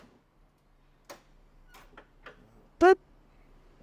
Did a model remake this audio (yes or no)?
no